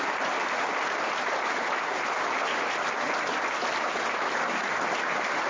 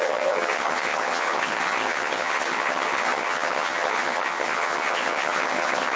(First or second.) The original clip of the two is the first